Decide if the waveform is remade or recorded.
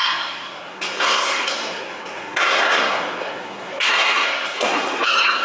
remade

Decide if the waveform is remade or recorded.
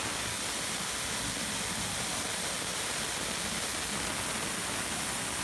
recorded